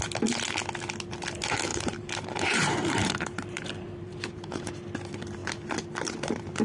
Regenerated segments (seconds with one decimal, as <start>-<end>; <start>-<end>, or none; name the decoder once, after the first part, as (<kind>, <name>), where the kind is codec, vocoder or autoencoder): 1.7-4.7 (vocoder, BigVGAN v2); 5.4-6.6